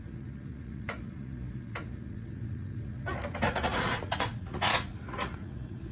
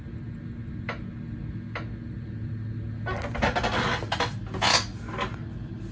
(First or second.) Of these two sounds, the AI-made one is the first